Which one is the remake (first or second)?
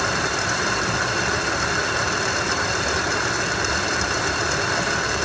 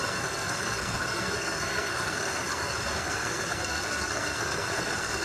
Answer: second